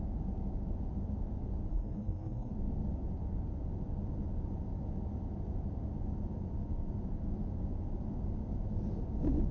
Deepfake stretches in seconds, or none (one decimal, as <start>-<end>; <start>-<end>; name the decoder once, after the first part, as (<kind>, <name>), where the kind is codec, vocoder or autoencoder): 1.7-2.5 (codec, SNAC)